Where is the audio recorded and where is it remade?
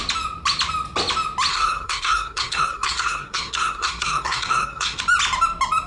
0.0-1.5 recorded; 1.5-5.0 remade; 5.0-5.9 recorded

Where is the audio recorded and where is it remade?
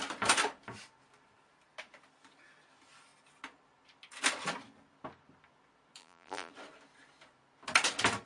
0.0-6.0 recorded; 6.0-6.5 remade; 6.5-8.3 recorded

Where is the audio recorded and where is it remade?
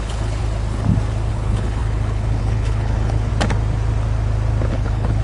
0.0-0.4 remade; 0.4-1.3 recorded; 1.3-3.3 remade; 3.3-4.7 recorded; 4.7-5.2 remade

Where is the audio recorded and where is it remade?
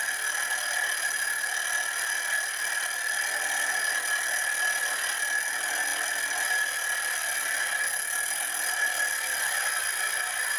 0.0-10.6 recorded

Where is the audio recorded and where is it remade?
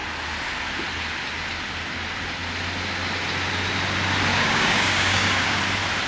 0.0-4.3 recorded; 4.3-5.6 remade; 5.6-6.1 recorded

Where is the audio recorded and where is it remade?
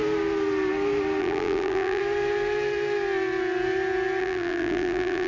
0.0-1.2 recorded; 1.2-2.0 remade; 2.0-4.2 recorded; 4.2-5.3 remade